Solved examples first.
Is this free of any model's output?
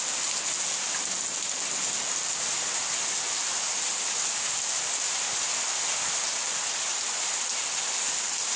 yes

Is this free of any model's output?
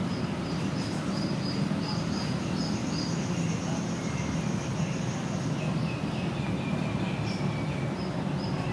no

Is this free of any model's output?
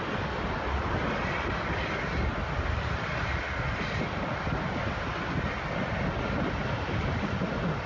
yes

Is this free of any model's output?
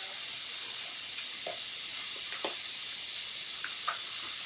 yes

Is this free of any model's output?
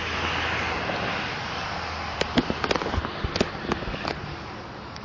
yes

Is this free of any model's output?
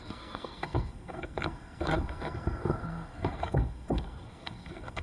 no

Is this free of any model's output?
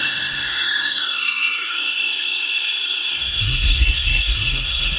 no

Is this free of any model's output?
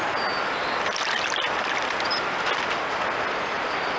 yes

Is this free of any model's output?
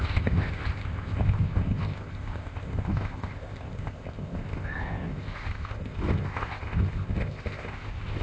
no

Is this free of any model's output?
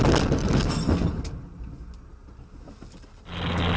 yes